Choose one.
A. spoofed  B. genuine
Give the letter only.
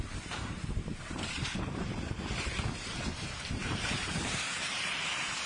A